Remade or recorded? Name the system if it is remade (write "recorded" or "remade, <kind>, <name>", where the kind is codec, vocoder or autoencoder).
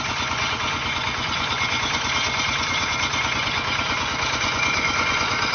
remade, vocoder, Vocos